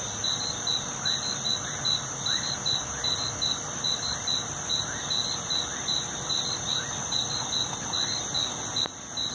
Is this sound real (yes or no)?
yes